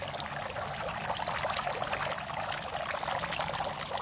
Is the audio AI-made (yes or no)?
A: no